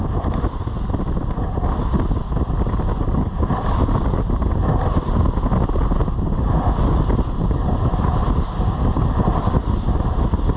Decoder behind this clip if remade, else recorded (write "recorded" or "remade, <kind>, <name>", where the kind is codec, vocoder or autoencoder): recorded